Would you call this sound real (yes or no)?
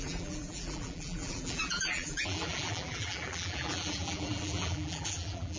no